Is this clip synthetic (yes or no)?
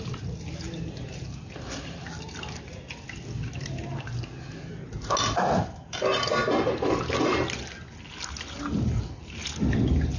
no